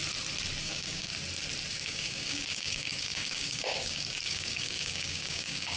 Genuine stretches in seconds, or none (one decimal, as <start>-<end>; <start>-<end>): 0.0-0.6; 1.1-1.7